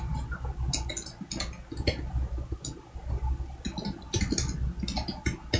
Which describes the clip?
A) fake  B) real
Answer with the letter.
B